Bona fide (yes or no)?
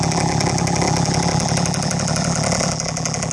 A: no